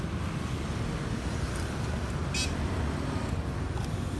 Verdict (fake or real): real